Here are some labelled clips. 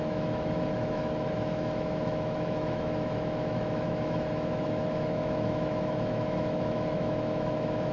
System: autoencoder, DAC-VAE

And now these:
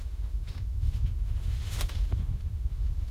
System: autoencoder, DAC-VAE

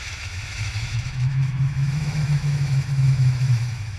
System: autoencoder, DAC-VAE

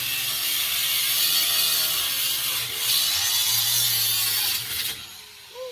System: none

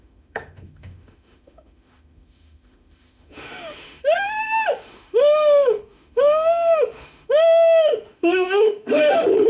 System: autoencoder, DAC-VAE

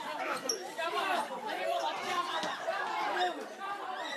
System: none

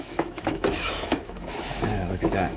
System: autoencoder, DAC-VAE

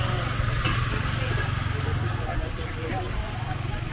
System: none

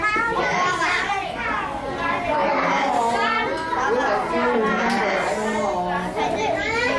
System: none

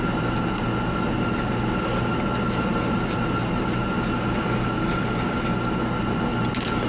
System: none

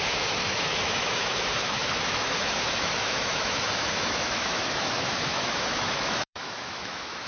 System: autoencoder, DAC-VAE